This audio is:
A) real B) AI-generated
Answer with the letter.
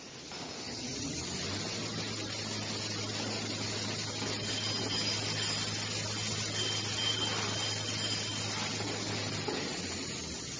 A